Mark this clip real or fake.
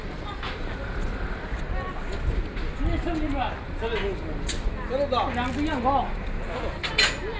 real